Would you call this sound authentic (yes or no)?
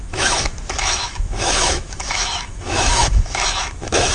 no